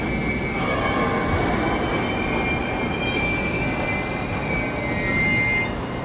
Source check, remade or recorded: recorded